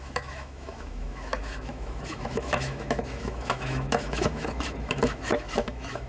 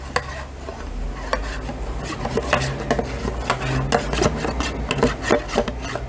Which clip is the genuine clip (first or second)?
second